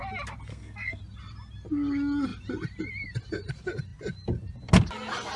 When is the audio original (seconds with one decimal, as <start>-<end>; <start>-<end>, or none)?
0.0-0.5; 1.0-5.4